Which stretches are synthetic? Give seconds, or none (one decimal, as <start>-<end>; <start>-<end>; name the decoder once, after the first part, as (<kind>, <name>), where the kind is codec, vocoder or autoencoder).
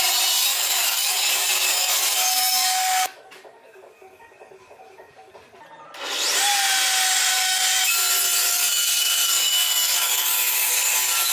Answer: 0.5-5.3 (codec, DAC); 7.3-7.9; 8.4-11.3